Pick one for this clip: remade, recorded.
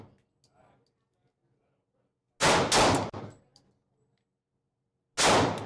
recorded